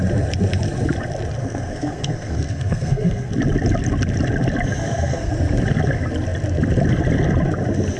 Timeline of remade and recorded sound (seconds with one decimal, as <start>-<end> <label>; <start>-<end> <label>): 0.0-1.4 recorded; 1.4-3.3 remade; 3.3-4.8 recorded; 4.8-5.3 remade; 5.3-8.0 recorded